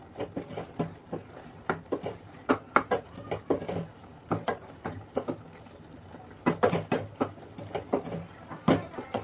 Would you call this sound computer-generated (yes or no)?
no